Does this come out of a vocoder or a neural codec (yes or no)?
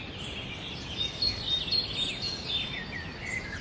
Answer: no